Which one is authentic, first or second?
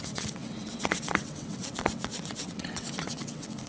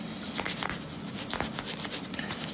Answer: second